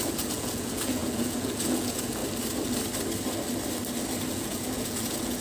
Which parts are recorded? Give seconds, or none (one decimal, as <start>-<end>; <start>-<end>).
2.2-4.3